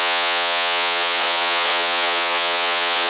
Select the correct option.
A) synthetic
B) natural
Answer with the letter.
A